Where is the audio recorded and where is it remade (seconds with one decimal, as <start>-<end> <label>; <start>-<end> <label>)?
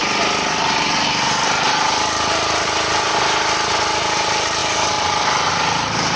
0.0-6.2 recorded